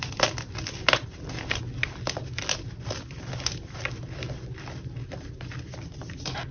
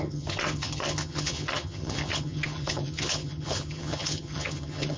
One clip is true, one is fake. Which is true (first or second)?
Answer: first